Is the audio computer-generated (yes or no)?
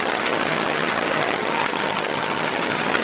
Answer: yes